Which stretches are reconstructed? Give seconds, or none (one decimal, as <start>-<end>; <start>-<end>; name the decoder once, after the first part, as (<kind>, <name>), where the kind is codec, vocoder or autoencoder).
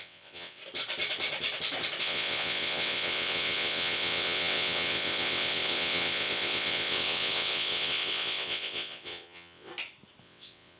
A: 0.0-0.6 (vocoder, WaveNeXt); 2.0-9.7; 10.2-10.8